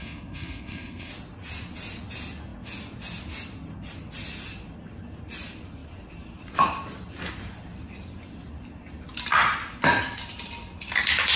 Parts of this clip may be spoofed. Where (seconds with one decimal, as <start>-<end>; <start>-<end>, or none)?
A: 0.0-1.1